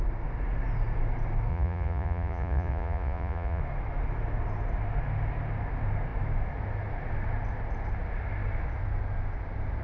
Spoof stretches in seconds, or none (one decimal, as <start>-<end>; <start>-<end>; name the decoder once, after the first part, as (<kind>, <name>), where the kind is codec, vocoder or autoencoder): 1.5-3.6 (vocoder, Vocos)